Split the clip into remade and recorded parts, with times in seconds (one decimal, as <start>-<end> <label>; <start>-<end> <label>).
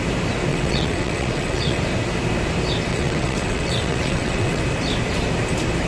0.0-0.5 recorded; 0.5-1.8 remade; 1.8-2.9 recorded; 2.9-4.6 remade; 4.6-5.9 recorded